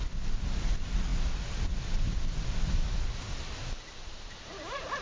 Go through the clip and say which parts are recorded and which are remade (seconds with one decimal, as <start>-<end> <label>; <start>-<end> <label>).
0.0-5.0 recorded